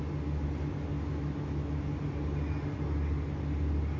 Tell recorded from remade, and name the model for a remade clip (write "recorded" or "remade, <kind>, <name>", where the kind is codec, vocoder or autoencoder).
recorded